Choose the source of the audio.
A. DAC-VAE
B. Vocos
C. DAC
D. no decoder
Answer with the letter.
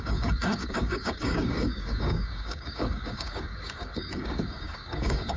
C